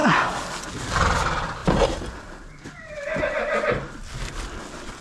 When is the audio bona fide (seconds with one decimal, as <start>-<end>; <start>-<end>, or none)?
0.0-1.6; 4.6-5.0